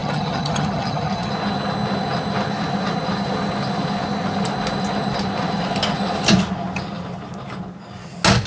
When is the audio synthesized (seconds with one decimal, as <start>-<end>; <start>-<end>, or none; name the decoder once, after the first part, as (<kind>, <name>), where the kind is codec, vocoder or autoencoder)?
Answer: 0.0-1.3 (vocoder, HiFi-GAN)